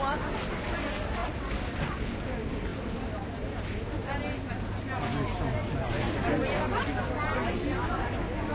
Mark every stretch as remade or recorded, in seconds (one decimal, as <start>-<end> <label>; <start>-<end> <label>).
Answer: 0.0-8.5 recorded